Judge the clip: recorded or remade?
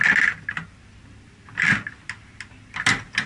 recorded